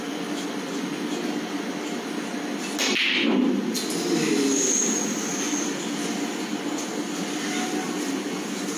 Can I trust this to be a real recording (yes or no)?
yes